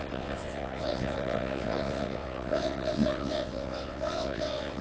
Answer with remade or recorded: remade